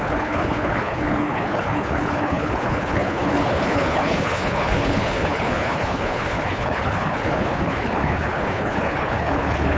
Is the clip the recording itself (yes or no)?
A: no